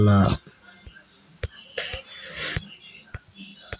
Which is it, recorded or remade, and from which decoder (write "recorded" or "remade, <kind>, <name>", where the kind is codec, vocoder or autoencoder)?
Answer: recorded